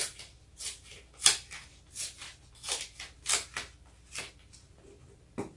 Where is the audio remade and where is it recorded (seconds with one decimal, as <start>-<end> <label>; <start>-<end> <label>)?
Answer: 0.0-5.6 recorded